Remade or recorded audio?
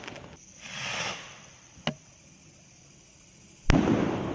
recorded